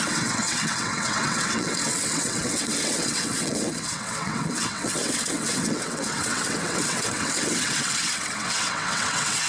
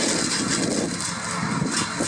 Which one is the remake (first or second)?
first